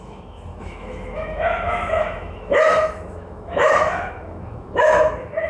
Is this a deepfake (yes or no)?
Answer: yes